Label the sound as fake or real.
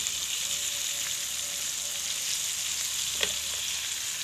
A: real